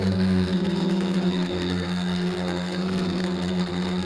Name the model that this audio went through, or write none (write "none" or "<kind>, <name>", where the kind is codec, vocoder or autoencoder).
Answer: codec, SNAC